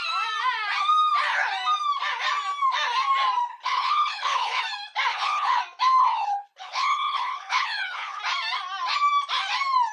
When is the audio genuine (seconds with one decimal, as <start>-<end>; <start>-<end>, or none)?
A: 0.0-3.5; 4.6-5.1; 5.6-6.0; 8.2-9.9